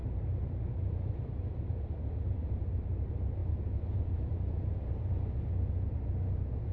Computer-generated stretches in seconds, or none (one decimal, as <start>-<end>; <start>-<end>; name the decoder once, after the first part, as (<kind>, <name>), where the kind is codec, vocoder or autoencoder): 0.0-1.4 (vocoder, BigVGAN v2); 3.4-4.8